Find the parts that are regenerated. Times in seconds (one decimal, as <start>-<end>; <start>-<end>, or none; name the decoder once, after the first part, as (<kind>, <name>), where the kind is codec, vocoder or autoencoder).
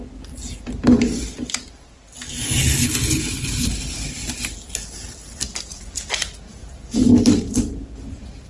2.8-3.7 (codec, HILCodec)